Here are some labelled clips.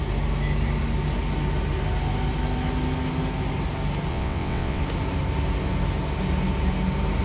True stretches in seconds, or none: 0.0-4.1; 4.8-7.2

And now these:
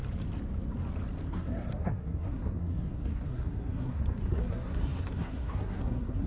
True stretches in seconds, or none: 0.0-1.3

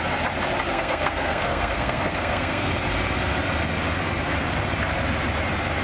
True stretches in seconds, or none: 0.0-0.7; 2.7-5.8